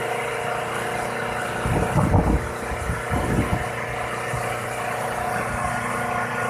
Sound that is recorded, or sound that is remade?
recorded